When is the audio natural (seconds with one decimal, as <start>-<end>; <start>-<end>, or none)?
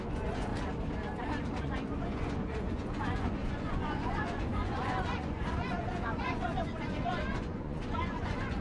0.5-1.6